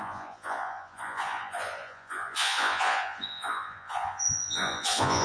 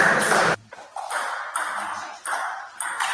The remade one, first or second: first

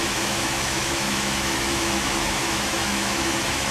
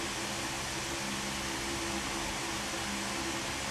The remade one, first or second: first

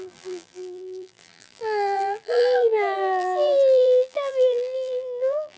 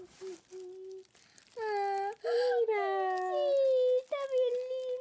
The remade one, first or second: first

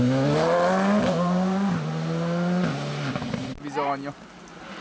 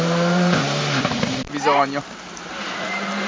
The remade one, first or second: second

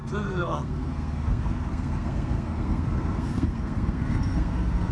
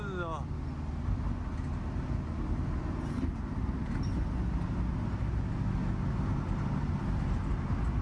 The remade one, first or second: first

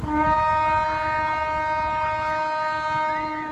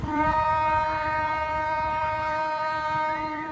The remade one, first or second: second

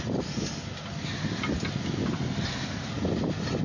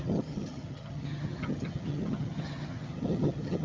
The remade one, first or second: second